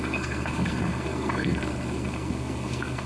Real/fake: fake